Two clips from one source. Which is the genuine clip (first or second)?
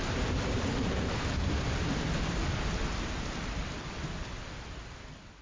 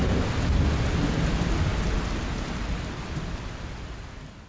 second